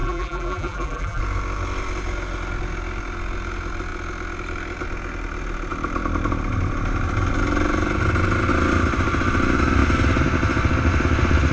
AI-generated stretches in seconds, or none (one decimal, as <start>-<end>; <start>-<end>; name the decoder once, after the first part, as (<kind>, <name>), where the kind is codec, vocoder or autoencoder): 0.0-1.2 (vocoder, BigVGAN v2)